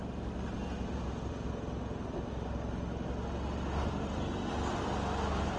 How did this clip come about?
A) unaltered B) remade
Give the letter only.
A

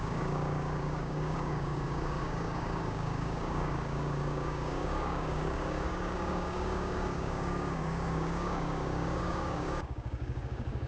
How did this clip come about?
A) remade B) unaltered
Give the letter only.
A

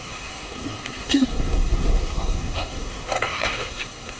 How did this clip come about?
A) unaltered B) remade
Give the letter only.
B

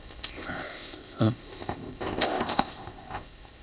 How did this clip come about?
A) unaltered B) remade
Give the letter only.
B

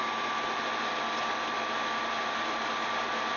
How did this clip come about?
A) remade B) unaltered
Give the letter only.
B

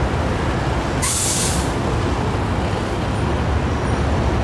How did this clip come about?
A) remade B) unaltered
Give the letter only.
B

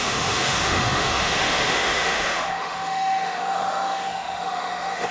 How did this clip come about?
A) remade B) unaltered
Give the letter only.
A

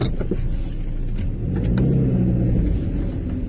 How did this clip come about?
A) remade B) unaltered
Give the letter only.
B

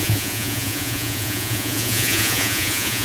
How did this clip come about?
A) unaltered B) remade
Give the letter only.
B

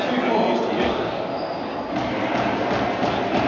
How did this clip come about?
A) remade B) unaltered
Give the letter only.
B